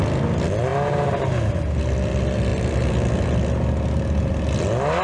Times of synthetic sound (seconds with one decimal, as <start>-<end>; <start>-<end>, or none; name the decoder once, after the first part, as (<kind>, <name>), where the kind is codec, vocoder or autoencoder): none